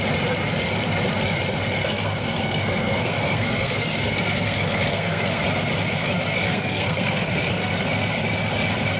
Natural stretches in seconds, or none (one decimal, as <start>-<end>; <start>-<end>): 0.0-1.8; 5.4-6.0; 7.7-9.0